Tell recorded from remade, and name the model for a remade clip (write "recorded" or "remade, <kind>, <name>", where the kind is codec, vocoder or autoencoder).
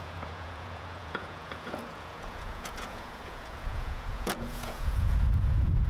remade, vocoder, Vocos